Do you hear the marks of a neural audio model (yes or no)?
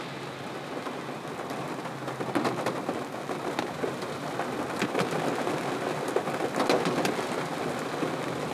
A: no